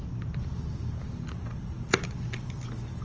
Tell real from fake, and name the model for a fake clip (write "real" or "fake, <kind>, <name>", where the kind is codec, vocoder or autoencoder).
real